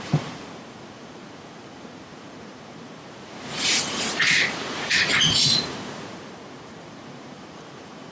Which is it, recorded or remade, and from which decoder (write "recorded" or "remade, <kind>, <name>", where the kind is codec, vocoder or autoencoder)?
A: remade, vocoder, Vocos